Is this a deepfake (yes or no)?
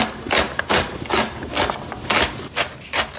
no